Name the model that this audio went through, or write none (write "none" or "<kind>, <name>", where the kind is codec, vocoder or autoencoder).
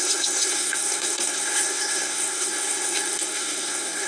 codec, SNAC